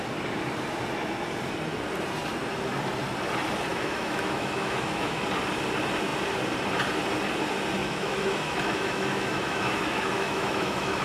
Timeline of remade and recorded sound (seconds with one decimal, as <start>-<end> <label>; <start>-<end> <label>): 0.0-3.7 recorded; 3.7-5.2 remade; 5.2-7.8 recorded; 7.8-11.0 remade